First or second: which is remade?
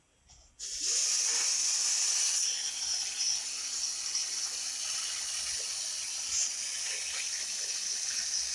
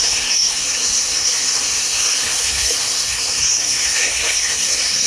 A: second